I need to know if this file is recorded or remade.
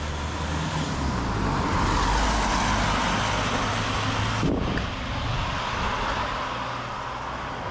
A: recorded